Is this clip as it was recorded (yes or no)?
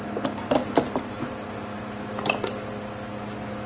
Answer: yes